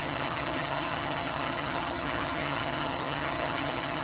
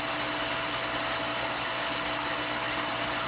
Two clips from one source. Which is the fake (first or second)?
first